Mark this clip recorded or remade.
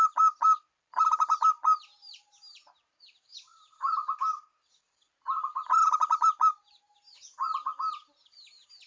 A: recorded